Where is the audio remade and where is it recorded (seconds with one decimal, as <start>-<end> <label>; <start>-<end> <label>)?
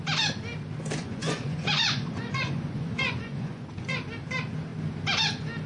0.0-1.0 recorded; 1.0-4.0 remade; 4.0-5.7 recorded